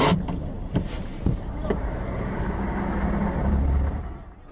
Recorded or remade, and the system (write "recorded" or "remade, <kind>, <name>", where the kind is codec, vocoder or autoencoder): remade, vocoder, BigVGAN v2